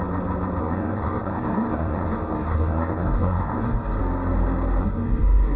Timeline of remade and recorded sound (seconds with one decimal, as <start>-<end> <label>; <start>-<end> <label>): 0.0-0.6 recorded; 0.6-4.0 remade; 4.0-4.8 recorded; 4.8-5.6 remade